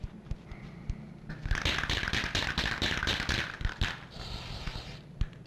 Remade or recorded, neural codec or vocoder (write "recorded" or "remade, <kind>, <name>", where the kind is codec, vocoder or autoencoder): recorded